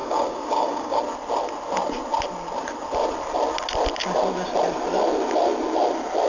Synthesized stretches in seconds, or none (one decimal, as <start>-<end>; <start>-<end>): 0.0-1.0